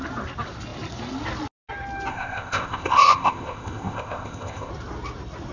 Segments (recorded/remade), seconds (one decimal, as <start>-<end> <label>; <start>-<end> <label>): 0.0-2.1 recorded; 2.1-4.7 remade; 4.7-5.5 recorded